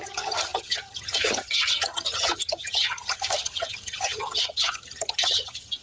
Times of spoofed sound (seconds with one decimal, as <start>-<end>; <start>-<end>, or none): 0.0-5.8

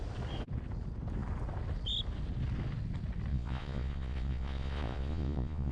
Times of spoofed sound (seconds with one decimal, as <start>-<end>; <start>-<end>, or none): 3.3-5.7

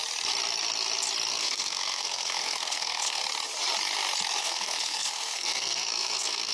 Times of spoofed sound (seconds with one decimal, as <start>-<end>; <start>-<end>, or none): 1.3-3.2; 4.4-6.5